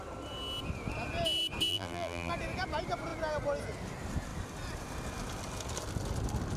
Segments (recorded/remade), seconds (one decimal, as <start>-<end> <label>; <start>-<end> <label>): 0.0-1.7 recorded; 1.7-2.3 remade; 2.3-6.6 recorded